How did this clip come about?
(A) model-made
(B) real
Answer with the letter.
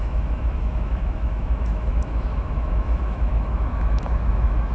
A